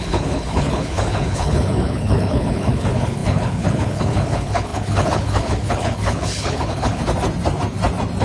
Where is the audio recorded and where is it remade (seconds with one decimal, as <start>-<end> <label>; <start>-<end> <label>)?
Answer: 0.0-7.0 remade; 7.0-8.2 recorded